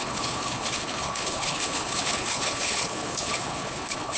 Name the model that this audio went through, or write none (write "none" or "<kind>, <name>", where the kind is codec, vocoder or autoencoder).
codec, HILCodec